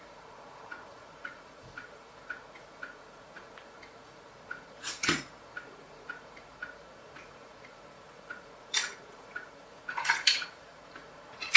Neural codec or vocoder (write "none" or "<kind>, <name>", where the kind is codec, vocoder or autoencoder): vocoder, Vocos